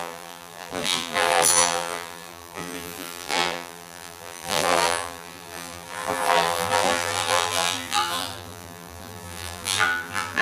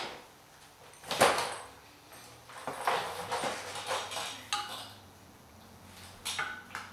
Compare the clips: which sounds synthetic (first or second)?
first